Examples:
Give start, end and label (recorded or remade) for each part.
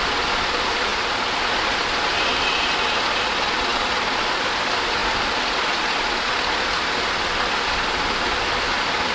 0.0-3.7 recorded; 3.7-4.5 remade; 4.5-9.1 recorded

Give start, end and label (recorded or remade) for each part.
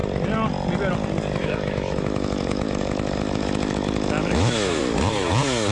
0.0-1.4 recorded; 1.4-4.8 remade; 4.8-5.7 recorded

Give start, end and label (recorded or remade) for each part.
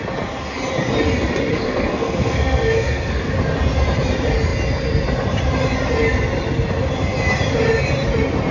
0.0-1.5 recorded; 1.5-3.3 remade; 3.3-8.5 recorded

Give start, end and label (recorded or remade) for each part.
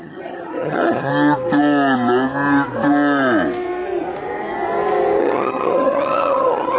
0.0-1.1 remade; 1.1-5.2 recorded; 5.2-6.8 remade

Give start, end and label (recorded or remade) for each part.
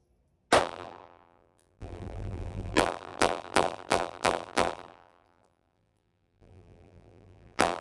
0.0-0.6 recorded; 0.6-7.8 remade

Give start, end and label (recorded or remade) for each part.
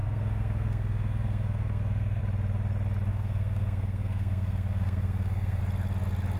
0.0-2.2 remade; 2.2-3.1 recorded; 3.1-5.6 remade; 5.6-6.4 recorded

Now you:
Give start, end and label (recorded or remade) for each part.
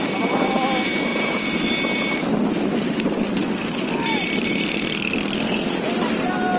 0.0-6.6 recorded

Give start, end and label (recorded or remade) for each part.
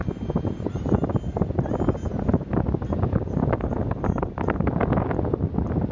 0.0-5.9 recorded